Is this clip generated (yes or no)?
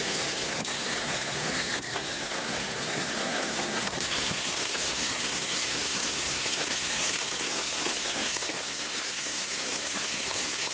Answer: yes